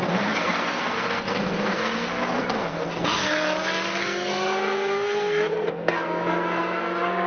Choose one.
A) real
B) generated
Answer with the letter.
B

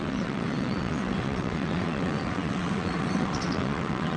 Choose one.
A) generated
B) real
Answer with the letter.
A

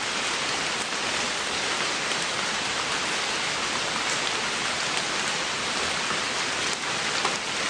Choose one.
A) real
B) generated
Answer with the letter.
A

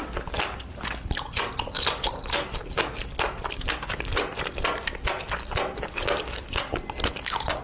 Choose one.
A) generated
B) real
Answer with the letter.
B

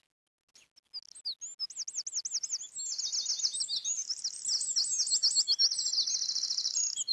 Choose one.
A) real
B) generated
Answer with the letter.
A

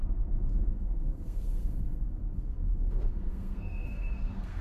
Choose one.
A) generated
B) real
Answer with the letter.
A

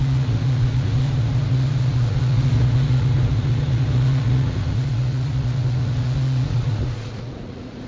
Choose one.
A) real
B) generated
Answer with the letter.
B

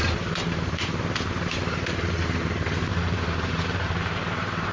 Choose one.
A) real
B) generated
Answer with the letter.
B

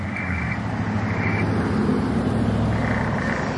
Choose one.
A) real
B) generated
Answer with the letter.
A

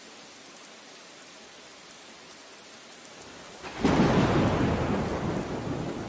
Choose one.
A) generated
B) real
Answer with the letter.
B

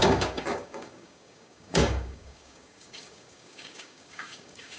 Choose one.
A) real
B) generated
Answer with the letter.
B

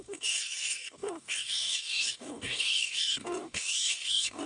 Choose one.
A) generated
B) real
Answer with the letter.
A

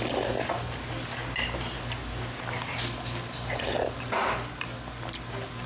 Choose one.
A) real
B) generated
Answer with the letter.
A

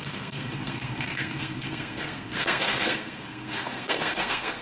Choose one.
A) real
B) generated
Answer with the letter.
B